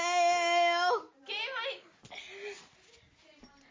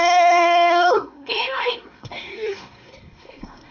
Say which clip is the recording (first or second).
first